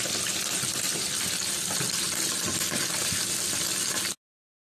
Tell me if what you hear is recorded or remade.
recorded